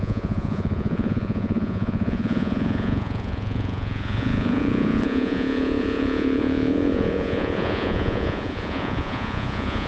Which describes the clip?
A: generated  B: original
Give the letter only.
A